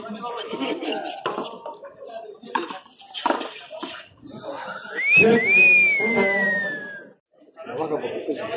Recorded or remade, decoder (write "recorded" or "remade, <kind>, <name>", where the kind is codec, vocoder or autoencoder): recorded